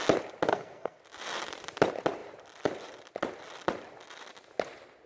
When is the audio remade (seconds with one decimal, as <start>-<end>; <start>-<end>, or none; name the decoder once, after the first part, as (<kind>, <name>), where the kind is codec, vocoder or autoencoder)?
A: 0.5-1.0 (codec, SNAC)